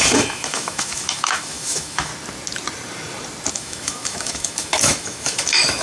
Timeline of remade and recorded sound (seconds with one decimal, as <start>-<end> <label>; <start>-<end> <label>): 0.0-2.1 remade; 2.1-3.5 recorded; 3.5-5.8 remade